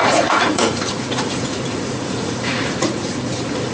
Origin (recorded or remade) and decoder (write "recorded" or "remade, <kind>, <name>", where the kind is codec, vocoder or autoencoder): remade, vocoder, Vocos